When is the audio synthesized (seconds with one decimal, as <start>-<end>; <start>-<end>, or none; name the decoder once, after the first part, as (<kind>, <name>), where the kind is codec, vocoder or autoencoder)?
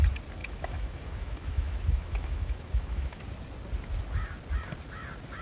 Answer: 0.4-3.2 (autoencoder, DAC-VAE)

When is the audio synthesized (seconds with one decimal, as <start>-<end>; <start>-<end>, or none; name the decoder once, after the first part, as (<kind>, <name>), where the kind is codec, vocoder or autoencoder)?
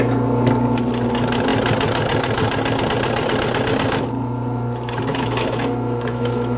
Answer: 5.1-6.6 (autoencoder, DAC-VAE)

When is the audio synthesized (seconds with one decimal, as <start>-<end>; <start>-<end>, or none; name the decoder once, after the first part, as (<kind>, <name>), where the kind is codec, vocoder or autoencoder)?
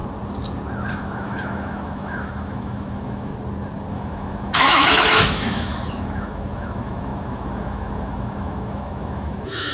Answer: 0.9-3.3 (autoencoder, DAC-VAE); 3.9-9.7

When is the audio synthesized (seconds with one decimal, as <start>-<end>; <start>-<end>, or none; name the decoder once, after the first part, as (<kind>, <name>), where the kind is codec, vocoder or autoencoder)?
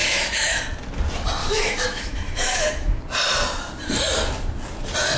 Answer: 0.0-0.6 (autoencoder, DAC-VAE); 1.4-3.0